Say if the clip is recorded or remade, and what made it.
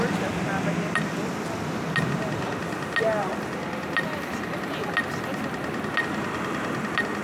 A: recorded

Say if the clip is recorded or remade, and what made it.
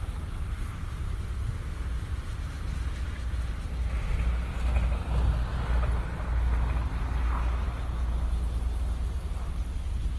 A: recorded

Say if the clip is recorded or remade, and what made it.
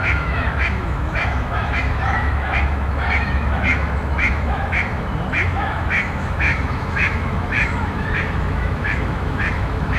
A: remade, autoencoder, DAC-VAE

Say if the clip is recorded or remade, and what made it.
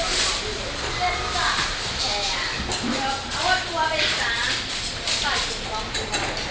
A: recorded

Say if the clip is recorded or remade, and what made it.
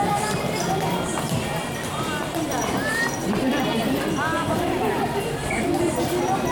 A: remade, vocoder, BigVGAN v2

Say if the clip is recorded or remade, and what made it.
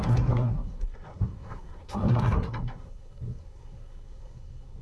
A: remade, codec, SNAC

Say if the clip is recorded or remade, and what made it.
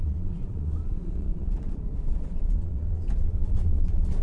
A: remade, vocoder, Vocos